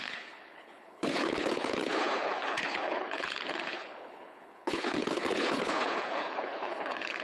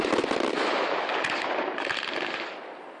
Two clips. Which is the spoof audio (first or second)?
first